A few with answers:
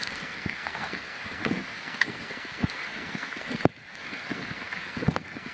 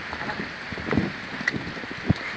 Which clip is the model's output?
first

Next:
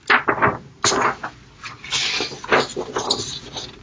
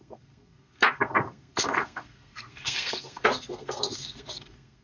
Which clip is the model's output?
second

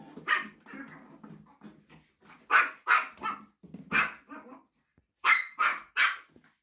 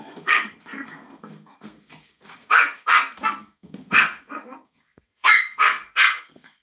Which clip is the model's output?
second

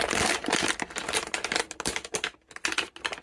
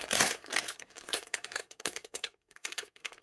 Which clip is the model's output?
second